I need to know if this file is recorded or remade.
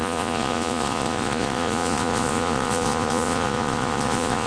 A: remade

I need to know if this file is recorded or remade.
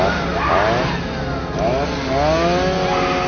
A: recorded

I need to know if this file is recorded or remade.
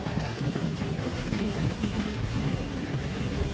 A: remade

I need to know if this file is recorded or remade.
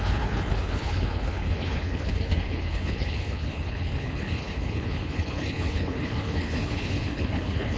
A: remade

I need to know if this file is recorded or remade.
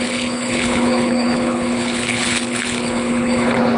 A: remade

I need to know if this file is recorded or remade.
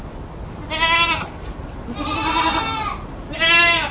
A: recorded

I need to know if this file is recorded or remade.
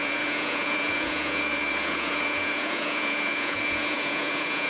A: remade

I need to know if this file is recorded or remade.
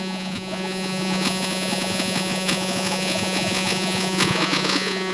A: remade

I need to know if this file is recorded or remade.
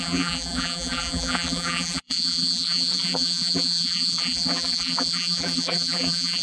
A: remade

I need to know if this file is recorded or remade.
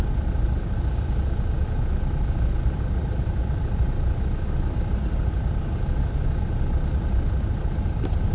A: recorded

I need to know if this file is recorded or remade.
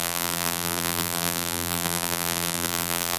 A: remade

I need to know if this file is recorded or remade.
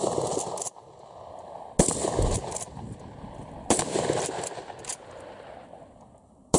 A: recorded